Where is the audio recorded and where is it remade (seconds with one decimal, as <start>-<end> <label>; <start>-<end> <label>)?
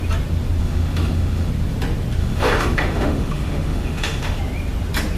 0.0-0.6 recorded; 0.6-1.5 remade; 1.5-2.2 recorded; 2.2-4.4 remade; 4.4-5.2 recorded